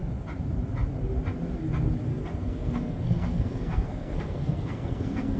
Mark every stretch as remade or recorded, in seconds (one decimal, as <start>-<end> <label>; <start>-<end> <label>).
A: 0.0-2.1 recorded; 2.1-5.4 remade